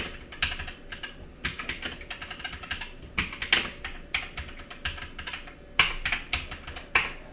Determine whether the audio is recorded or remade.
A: recorded